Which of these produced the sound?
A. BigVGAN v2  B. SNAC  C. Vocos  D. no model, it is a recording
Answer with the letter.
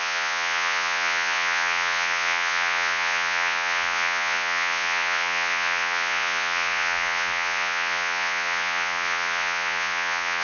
C